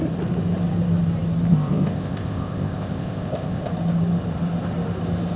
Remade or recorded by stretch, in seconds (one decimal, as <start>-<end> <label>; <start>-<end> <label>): 0.0-1.5 recorded; 1.5-3.7 remade; 3.7-5.4 recorded